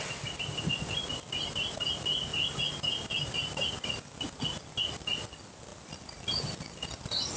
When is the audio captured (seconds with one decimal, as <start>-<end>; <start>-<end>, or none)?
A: 0.0-7.4